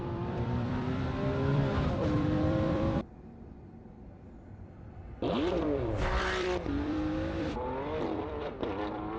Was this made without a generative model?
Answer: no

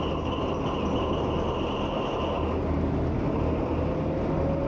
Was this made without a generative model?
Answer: yes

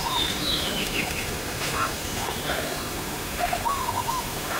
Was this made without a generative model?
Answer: no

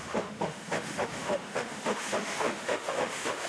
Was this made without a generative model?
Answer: no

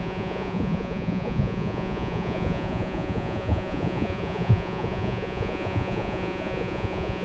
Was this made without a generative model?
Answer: no